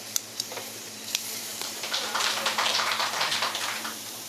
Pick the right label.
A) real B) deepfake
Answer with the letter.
B